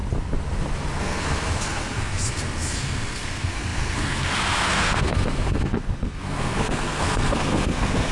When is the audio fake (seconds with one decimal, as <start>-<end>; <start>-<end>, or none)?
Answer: 1.0-8.1

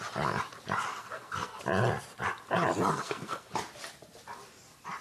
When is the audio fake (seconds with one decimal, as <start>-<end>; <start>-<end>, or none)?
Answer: 0.9-1.6; 2.9-3.5

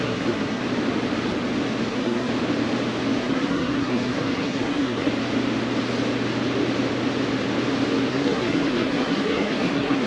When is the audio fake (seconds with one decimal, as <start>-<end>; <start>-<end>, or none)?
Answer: 0.0-0.6; 1.9-2.3; 3.2-5.1; 8.1-10.1

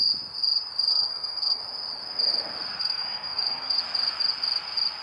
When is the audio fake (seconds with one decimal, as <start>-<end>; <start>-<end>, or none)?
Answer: 0.9-1.6; 2.8-3.8

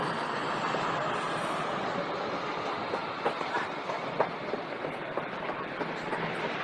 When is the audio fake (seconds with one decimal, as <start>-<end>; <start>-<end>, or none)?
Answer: none

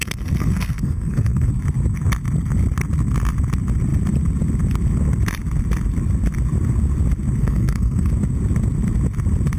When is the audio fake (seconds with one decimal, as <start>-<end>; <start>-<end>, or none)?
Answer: 0.0-1.5; 7.4-8.1